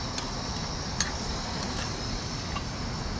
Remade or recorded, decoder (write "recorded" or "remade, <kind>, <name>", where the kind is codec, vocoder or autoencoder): recorded